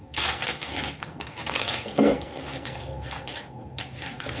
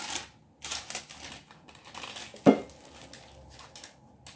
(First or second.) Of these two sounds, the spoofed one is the first